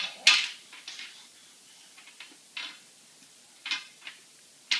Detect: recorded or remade recorded